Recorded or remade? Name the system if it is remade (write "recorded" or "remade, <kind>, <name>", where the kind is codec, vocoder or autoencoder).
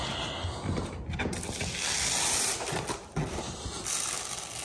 recorded